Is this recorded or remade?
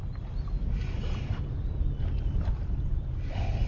recorded